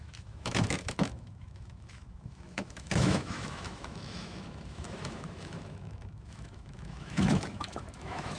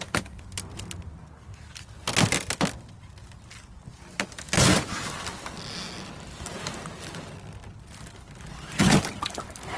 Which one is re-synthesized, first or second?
first